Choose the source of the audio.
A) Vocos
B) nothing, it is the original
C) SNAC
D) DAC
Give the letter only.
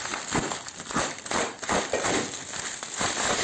B